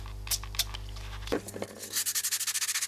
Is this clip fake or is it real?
real